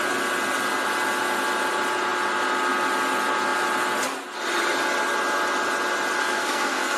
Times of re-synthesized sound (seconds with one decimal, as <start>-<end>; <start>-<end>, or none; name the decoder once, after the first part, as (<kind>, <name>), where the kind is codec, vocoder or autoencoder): 6.2-7.0 (codec, SNAC)